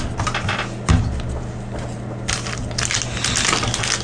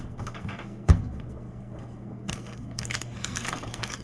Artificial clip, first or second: second